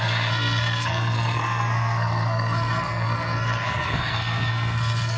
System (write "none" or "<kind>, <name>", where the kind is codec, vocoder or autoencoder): codec, SNAC